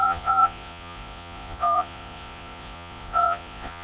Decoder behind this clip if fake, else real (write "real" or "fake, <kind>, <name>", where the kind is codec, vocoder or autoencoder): fake, vocoder, Vocos